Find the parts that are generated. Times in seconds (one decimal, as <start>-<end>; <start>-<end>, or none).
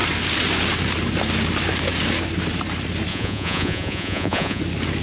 3.1-4.6